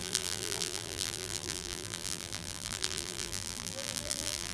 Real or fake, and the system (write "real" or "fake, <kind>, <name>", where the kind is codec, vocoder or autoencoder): fake, vocoder, BigVGAN v2